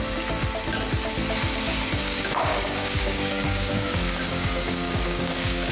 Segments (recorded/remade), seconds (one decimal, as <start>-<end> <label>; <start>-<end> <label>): 0.0-2.0 recorded; 2.0-5.7 remade